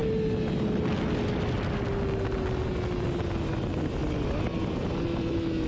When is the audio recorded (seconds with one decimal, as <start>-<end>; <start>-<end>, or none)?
0.0-5.7